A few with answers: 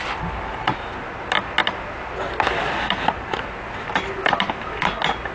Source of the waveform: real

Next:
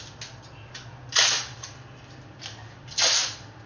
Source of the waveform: real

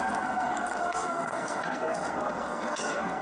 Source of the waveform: fake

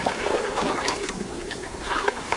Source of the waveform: fake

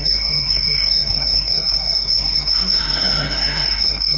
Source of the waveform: fake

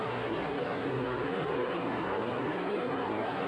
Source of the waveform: fake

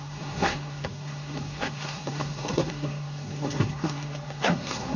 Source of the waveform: fake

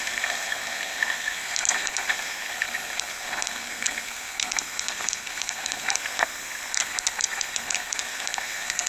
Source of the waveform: fake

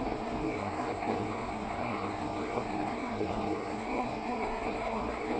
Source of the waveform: fake